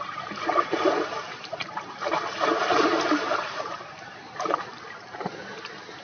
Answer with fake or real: fake